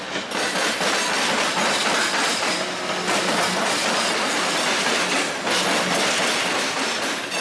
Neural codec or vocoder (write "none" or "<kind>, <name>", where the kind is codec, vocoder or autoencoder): none